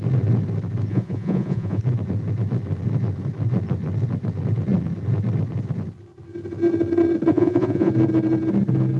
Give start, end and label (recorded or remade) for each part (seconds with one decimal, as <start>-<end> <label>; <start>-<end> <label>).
0.0-0.9 recorded; 0.9-1.8 remade; 1.8-7.3 recorded; 7.3-7.9 remade; 7.9-9.0 recorded